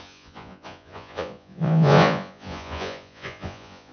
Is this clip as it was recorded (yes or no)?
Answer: no